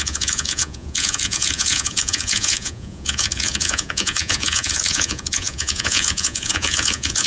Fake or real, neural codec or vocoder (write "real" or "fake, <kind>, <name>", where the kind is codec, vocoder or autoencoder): fake, vocoder, Vocos